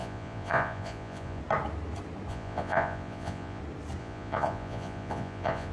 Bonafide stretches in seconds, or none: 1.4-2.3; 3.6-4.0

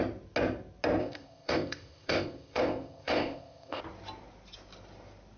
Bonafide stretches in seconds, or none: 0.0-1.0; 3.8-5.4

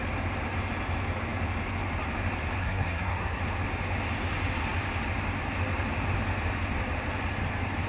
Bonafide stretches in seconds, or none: 0.0-2.6; 3.4-7.9

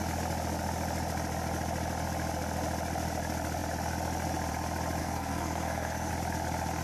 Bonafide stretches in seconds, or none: 0.0-5.0; 6.1-6.8

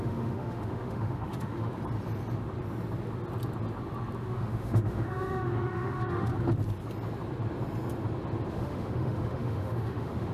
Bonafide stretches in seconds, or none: 1.7-4.2; 6.3-8.5

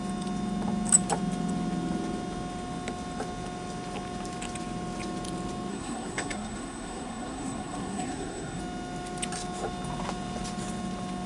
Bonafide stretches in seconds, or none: 0.0-5.7; 8.6-11.3